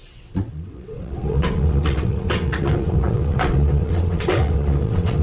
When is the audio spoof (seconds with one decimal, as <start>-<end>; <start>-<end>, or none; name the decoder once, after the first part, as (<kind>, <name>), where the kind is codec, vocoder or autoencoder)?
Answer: 0.0-5.2 (vocoder, WaveNeXt)